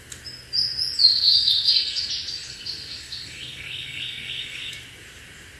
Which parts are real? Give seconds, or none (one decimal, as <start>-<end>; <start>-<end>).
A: 0.0-1.1; 2.1-2.5; 4.7-5.6